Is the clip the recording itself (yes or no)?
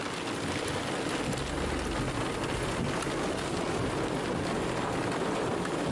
yes